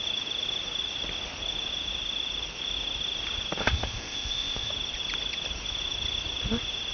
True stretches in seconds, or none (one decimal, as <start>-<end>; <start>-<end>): 0.0-3.6; 4.7-6.9